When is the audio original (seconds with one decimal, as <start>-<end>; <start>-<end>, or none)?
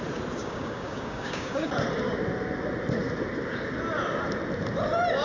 0.0-0.4; 1.7-5.2